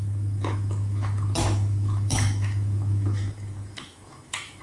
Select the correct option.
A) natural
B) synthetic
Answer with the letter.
B